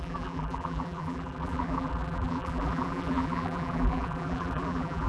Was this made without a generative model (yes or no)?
no